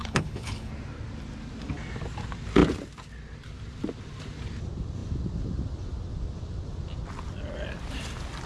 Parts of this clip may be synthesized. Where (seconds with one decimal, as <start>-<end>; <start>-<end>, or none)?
0.0-0.7